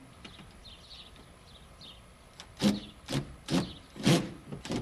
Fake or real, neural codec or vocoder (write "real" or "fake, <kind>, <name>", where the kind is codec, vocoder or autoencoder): real